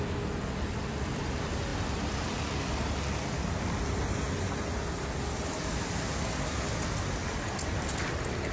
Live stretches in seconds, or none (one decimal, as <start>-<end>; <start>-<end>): 0.0-1.7; 2.2-8.5